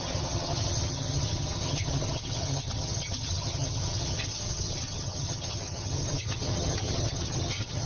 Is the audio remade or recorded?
remade